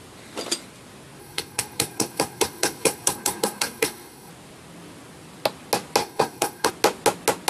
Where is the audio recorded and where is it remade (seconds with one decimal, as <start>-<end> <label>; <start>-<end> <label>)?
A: 0.0-1.2 recorded; 1.2-4.3 remade; 4.3-6.0 recorded; 6.0-6.7 remade; 6.7-7.5 recorded